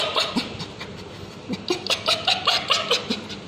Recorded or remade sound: recorded